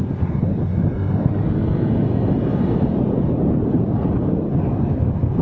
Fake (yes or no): no